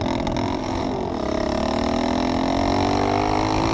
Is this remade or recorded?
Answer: recorded